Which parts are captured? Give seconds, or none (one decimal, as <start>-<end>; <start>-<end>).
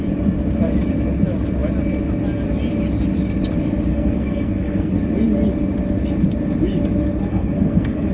0.0-3.9; 4.9-7.3